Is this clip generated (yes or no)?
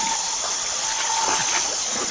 no